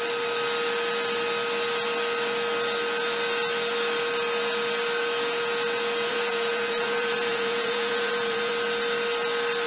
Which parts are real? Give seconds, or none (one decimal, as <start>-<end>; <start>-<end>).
0.0-6.1; 8.5-9.7